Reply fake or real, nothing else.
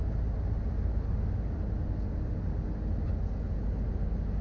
real